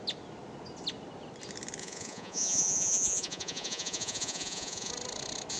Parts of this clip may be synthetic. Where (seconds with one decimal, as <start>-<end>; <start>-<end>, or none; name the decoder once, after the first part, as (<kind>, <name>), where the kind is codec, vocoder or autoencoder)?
1.8-4.9 (vocoder, Vocos)